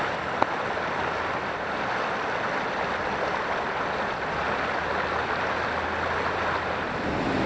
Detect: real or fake real